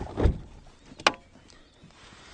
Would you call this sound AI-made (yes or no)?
no